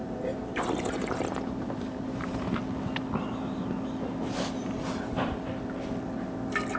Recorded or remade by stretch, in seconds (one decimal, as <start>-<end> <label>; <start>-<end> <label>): 0.0-2.6 remade; 2.6-4.6 recorded; 4.6-5.4 remade; 5.4-6.8 recorded